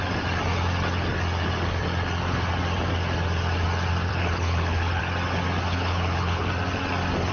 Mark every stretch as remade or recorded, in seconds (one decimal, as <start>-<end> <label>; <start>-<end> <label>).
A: 0.0-4.1 recorded; 4.1-5.0 remade; 5.0-5.7 recorded; 5.7-6.5 remade; 6.5-7.3 recorded